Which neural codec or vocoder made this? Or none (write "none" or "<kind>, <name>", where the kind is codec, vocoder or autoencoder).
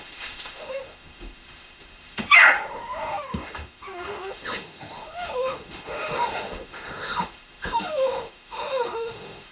autoencoder, DAC-VAE